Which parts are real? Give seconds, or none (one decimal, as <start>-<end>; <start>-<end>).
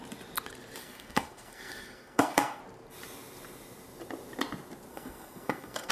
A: 0.0-0.8; 2.6-4.9